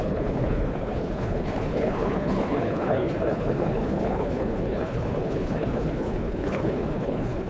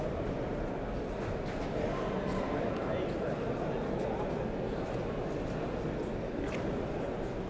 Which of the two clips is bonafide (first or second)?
second